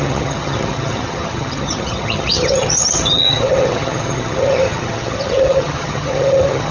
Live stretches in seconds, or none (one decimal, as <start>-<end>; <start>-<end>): none